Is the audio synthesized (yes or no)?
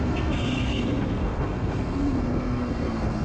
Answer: yes